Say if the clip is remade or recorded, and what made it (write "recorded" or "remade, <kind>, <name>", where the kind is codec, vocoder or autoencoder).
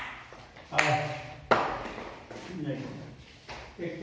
recorded